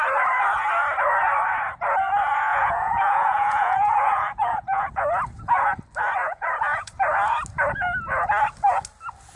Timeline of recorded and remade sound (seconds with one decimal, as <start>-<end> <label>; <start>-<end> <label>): 0.0-2.5 recorded; 2.5-4.9 remade; 4.9-6.2 recorded; 6.2-6.9 remade; 6.9-9.4 recorded